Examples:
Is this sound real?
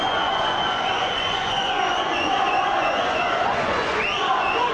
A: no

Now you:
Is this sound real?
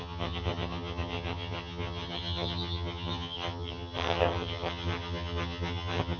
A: no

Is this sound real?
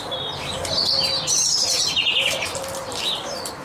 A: no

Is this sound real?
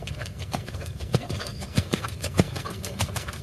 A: no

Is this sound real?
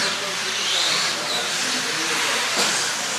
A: yes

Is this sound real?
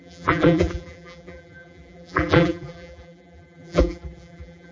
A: no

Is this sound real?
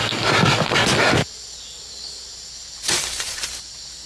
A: yes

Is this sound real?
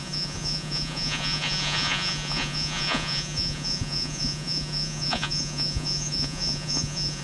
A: no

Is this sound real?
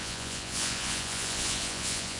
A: no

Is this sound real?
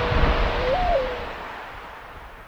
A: no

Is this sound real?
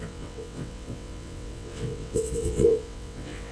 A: no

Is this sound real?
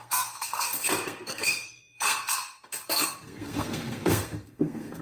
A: no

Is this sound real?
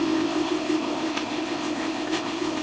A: no